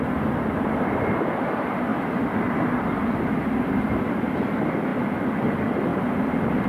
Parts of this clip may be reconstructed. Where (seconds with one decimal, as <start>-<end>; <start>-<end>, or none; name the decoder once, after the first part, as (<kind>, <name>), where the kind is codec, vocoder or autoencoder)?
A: 0.0-1.9 (vocoder, BigVGAN v2); 2.6-4.9; 5.5-6.7